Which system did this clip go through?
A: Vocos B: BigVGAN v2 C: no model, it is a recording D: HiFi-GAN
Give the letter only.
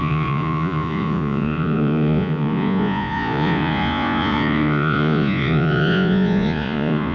A